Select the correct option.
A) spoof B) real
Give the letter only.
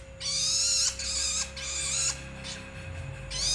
B